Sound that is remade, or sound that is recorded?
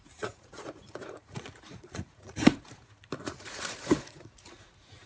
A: remade